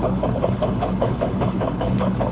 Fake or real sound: fake